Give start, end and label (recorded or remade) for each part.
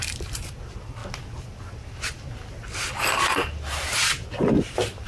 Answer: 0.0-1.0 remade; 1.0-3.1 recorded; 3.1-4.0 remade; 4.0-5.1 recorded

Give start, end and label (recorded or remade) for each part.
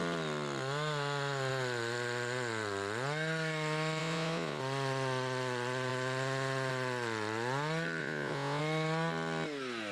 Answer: 0.0-4.0 recorded; 4.0-4.6 remade; 4.6-8.0 recorded; 8.0-8.6 remade; 8.6-9.9 recorded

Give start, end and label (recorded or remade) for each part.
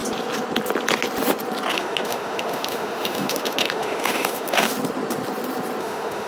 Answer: 0.0-1.7 recorded; 1.7-4.7 remade; 4.7-5.8 recorded; 5.8-6.3 remade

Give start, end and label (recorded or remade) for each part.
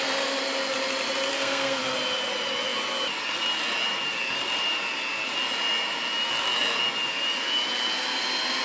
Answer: 0.0-1.3 recorded; 1.3-1.8 remade; 1.8-8.6 recorded